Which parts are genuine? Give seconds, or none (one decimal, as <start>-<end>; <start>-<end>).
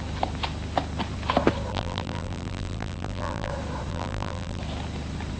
0.0-1.7; 3.5-3.9; 4.6-5.4